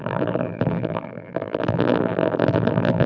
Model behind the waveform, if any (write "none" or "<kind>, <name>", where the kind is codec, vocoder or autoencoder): vocoder, BigVGAN v2